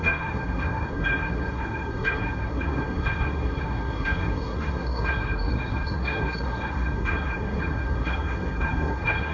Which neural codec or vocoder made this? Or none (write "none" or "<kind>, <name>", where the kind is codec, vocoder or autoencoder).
codec, SNAC